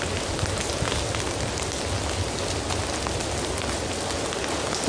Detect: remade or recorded recorded